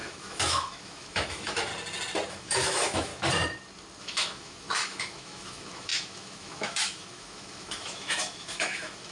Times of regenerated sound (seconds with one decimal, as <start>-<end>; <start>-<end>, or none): 0.0-1.7; 2.3-3.1; 4.0-9.1